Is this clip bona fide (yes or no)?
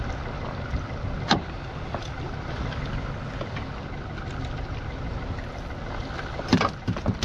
yes